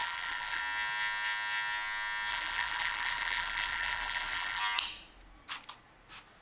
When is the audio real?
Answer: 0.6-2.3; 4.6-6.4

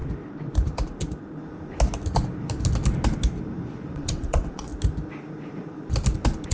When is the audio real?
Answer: 0.0-3.9; 4.7-6.5

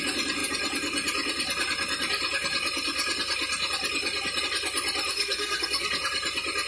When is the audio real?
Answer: 0.0-5.1; 5.9-6.7

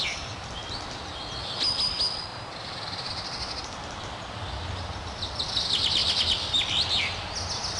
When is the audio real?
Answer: 0.0-2.3; 3.1-7.8

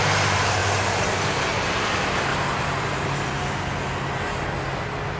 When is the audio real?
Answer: 0.0-5.2

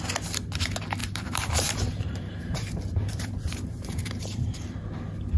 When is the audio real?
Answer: 0.0-1.0; 4.2-5.4

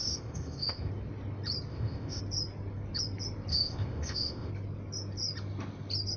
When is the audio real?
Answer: 0.9-1.7; 2.2-3.5; 4.5-6.2

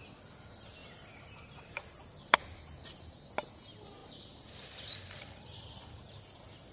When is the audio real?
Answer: 0.0-4.0; 5.4-6.7